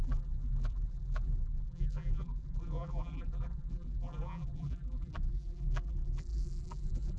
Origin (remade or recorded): remade